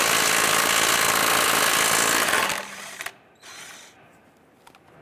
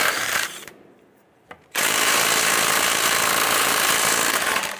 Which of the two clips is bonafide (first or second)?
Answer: first